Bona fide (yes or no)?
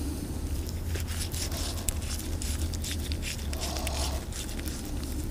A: yes